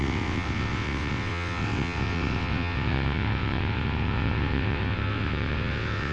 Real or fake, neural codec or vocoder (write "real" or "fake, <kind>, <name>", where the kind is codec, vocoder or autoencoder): fake, vocoder, WaveNeXt